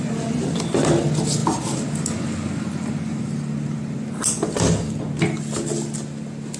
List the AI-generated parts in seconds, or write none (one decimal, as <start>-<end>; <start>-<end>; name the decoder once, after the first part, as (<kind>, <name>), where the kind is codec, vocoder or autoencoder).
none